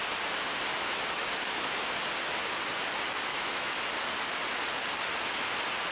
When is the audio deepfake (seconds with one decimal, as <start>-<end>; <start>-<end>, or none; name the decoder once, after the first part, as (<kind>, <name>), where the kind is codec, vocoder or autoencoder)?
0.7-1.9 (autoencoder, DAC-VAE); 3.3-3.8